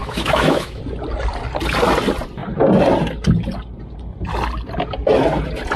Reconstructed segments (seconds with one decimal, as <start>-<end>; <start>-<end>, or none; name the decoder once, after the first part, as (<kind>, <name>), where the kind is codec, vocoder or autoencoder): 0.0-0.8 (autoencoder, DAC-VAE)